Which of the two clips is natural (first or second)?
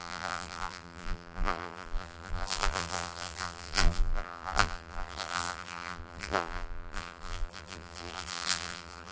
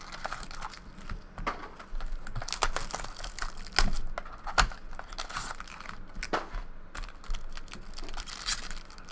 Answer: second